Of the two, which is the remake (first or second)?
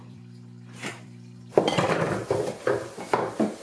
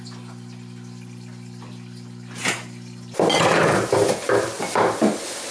first